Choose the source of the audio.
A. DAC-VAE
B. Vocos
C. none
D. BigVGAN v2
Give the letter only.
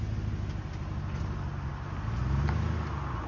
C